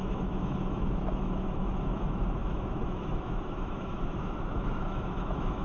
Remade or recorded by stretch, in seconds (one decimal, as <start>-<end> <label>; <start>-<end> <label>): 0.0-5.6 remade